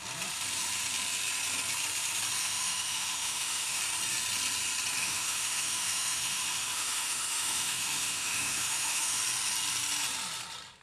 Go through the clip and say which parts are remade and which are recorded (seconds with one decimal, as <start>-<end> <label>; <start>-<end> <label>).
0.0-2.4 recorded; 2.4-3.8 remade; 3.8-5.0 recorded; 5.0-9.2 remade; 9.2-10.8 recorded

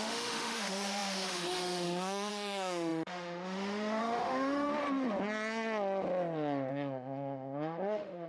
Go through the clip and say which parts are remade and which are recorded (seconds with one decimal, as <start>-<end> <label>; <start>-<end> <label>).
0.0-4.7 remade; 4.7-6.7 recorded; 6.7-8.3 remade

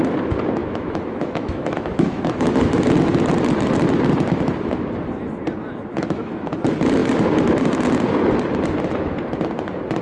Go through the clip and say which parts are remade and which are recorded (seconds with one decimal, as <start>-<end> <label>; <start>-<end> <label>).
0.0-0.6 recorded; 0.6-2.5 remade; 2.5-5.9 recorded; 5.9-6.5 remade; 6.5-10.0 recorded

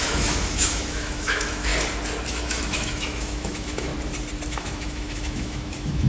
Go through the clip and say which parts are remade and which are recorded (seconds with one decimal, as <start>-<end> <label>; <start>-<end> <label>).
0.0-1.7 remade; 1.7-2.3 recorded; 2.3-3.9 remade; 3.9-4.5 recorded; 4.5-6.1 remade

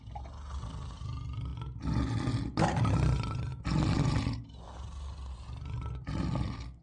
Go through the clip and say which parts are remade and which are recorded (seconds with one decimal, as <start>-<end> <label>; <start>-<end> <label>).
0.0-6.8 recorded

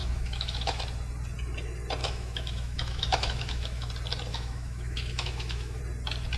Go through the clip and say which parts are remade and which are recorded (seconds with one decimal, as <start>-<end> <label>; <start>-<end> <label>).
0.0-0.8 remade; 0.8-2.0 recorded; 2.0-3.9 remade; 3.9-4.3 recorded; 4.3-5.8 remade; 5.8-6.4 recorded

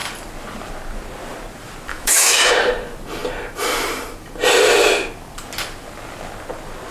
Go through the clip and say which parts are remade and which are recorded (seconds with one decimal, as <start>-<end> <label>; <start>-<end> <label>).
0.0-1.9 recorded; 1.9-2.5 remade; 2.5-6.9 recorded